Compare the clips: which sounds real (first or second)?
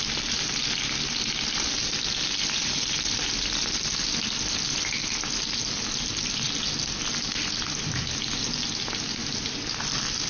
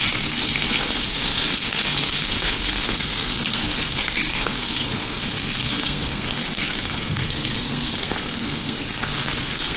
first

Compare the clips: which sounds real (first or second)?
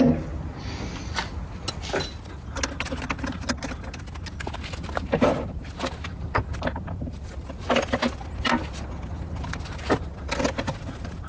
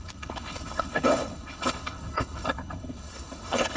first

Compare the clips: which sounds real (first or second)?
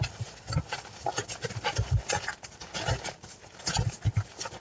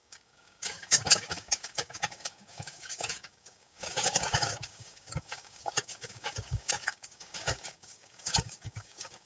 first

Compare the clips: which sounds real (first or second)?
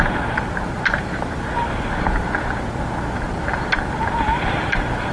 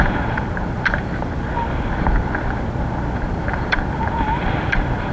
first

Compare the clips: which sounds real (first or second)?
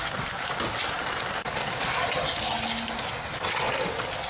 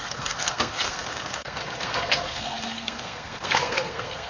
first